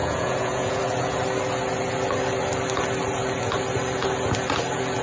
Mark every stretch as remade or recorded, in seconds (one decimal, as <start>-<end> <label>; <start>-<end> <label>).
0.0-0.8 remade; 0.8-5.0 recorded